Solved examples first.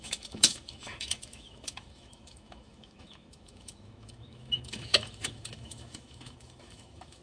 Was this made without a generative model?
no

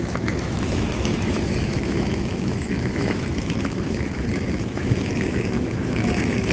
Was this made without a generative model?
no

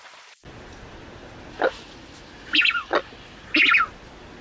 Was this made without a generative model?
yes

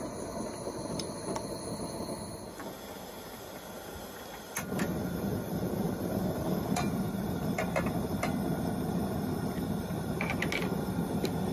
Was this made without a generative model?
yes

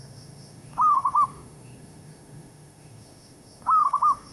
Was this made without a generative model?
no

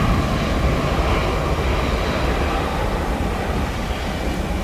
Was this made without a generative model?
yes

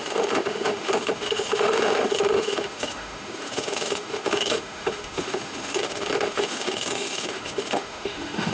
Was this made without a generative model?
no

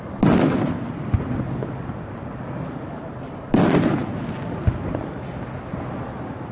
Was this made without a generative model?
yes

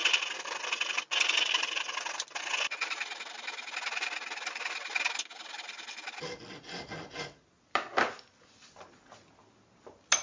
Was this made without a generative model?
yes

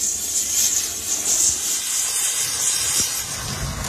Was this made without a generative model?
yes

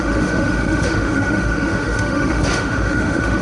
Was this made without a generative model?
no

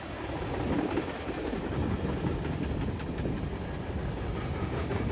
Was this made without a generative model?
yes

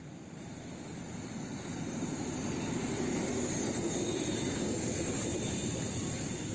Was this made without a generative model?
yes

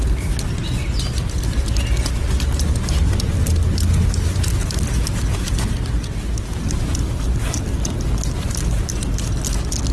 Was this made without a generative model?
yes